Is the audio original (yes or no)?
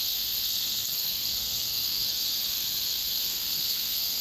no